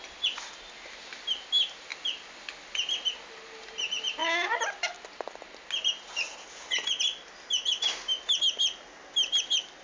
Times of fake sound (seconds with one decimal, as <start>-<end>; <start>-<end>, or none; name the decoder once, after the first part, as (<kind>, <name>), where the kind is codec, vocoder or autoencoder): none